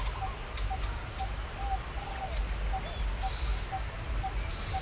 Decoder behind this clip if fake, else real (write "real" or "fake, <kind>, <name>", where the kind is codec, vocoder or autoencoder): real